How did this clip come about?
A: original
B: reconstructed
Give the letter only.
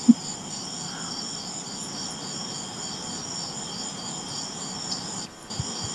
A